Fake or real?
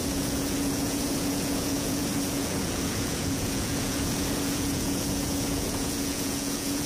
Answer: fake